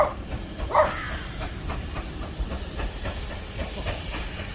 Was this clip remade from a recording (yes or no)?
no